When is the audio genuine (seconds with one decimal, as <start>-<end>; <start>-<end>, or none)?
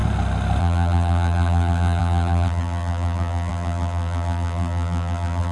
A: 0.0-0.6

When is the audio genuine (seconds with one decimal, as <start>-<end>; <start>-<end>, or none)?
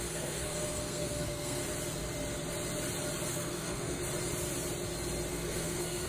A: 1.6-3.3; 4.0-5.3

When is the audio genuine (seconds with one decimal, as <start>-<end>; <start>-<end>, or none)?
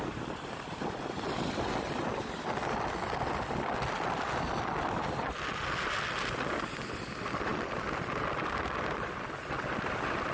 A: 0.0-10.3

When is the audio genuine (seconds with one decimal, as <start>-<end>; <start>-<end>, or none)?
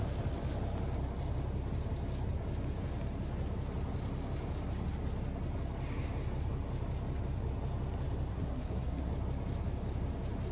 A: 0.0-8.3; 9.1-10.5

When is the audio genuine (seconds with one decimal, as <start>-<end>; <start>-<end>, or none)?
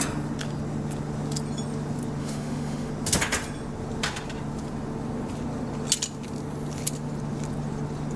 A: 0.0-2.2; 2.9-8.2